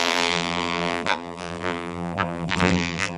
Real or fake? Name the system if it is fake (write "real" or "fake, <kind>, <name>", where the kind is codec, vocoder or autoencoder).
fake, vocoder, BigVGAN v2